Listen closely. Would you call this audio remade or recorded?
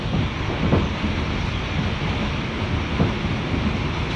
recorded